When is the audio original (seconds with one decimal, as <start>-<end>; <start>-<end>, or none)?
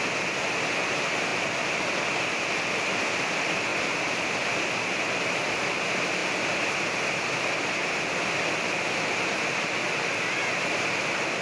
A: 0.0-11.4